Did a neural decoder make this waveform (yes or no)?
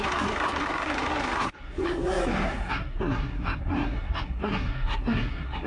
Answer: yes